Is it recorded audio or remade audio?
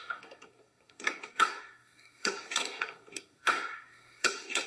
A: remade